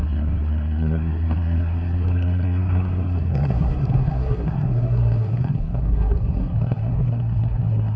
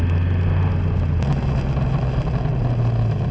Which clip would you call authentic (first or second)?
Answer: second